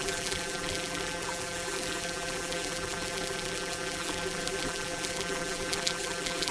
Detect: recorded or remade remade